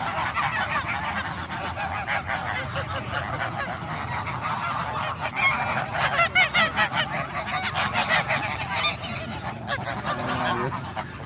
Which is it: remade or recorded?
recorded